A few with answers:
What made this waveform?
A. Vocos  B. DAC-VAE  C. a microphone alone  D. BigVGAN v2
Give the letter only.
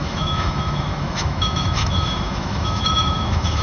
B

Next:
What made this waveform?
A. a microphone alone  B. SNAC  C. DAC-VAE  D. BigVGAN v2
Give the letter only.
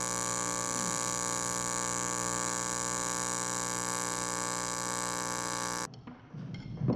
A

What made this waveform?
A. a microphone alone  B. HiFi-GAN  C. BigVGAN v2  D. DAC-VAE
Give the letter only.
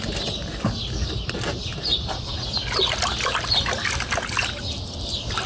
A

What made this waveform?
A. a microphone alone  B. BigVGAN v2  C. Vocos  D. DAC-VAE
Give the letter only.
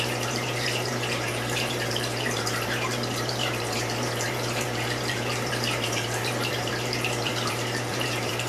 B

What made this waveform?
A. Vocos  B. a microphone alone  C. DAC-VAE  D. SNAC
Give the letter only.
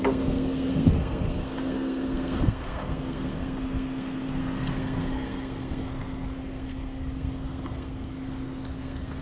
D